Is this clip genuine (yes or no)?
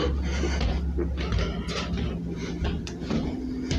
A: yes